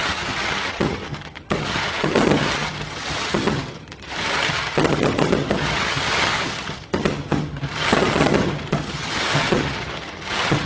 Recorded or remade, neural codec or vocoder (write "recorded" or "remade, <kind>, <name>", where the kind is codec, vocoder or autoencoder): remade, vocoder, HiFi-GAN